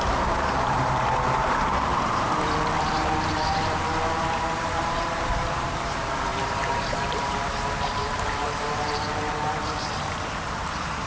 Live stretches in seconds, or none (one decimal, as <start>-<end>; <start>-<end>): none